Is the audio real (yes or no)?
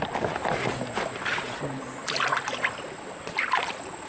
yes